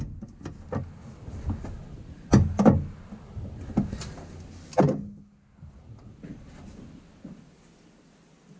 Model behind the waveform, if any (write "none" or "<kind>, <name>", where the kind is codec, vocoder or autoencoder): none